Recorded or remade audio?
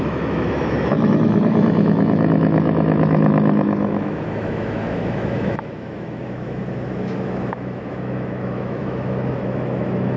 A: remade